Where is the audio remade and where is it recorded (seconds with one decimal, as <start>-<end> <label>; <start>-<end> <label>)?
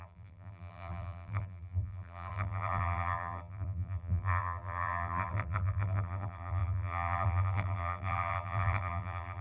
0.0-9.4 remade